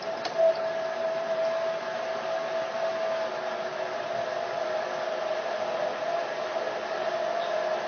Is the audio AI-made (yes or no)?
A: no